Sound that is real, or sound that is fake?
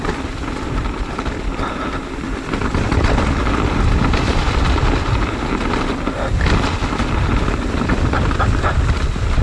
fake